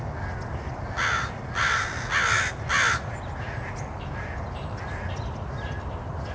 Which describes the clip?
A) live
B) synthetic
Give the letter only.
A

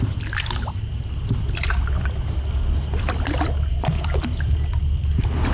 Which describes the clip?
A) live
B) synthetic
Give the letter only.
A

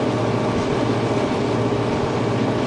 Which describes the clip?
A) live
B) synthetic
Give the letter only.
A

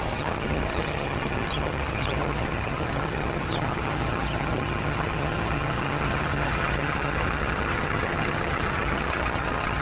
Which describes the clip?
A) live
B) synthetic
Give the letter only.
B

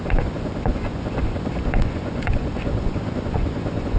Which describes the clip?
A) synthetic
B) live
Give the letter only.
A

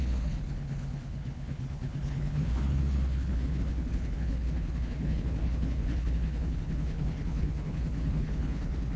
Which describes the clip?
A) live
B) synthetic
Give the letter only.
B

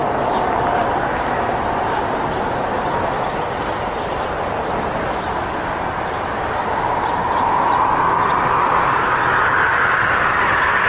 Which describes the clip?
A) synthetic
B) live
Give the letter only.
B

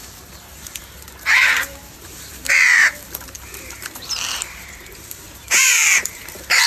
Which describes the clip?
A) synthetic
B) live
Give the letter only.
A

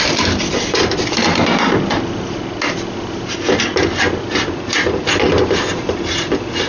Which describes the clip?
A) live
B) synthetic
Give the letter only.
A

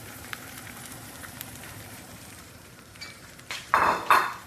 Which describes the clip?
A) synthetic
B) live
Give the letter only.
A